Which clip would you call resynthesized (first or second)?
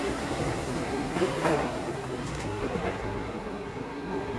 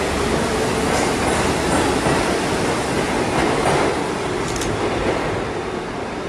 first